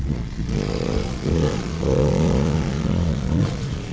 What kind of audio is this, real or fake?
fake